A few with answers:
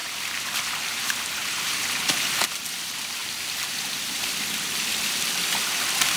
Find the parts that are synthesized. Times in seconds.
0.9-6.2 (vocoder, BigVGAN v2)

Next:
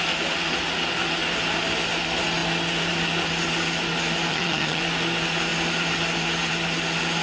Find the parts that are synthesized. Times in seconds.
4.3-4.8 (vocoder, HiFi-GAN)